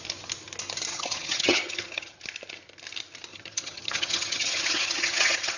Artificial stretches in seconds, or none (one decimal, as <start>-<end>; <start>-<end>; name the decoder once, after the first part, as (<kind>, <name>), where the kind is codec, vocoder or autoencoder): 0.9-2.2 (vocoder, HiFi-GAN); 3.3-5.6

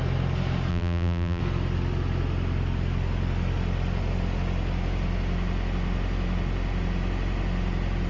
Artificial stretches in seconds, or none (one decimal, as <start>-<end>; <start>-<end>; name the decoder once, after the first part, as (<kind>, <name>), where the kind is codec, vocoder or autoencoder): 0.7-1.4 (vocoder, BigVGAN v2)